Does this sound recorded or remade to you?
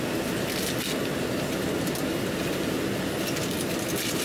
recorded